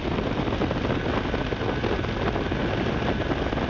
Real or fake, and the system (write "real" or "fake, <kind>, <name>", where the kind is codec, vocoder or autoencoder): real